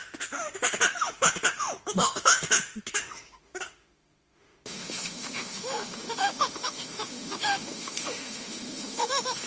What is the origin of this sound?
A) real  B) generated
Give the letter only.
B